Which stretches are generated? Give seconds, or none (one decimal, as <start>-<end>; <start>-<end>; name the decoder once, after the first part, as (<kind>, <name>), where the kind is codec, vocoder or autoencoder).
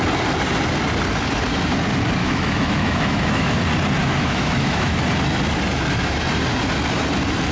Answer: 2.2-3.6 (autoencoder, DAC-VAE); 4.0-5.0